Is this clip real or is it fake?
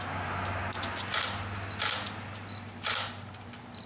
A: real